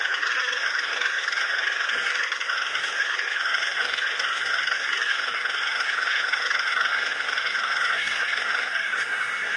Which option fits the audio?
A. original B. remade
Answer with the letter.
B